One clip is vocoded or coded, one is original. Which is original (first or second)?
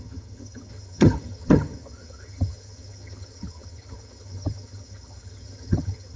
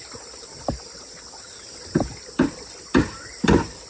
second